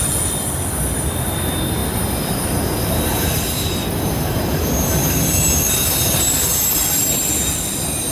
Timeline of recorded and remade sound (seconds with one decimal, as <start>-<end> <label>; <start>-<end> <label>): 0.0-8.1 recorded